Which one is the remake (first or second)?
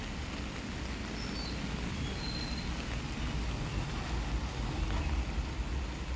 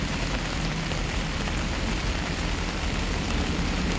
second